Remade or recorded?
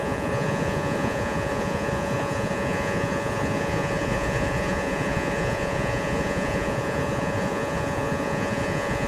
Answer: remade